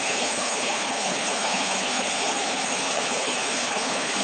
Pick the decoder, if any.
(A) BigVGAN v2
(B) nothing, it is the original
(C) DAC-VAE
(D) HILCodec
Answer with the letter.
D